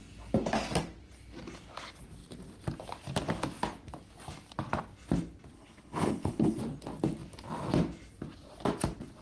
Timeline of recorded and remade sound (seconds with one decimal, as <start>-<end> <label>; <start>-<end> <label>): 0.0-5.5 recorded; 5.5-6.6 remade; 6.6-9.2 recorded